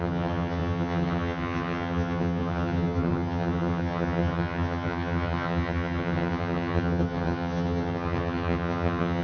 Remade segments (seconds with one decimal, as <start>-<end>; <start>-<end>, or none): 0.0-9.2